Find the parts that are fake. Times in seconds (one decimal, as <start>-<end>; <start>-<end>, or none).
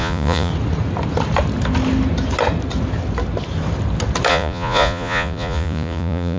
0.0-0.5; 4.3-6.4